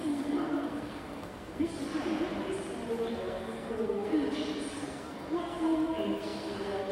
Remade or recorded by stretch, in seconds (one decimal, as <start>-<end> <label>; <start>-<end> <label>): 0.0-1.8 remade; 1.8-3.1 recorded; 3.1-4.1 remade; 4.1-4.7 recorded; 4.7-6.9 remade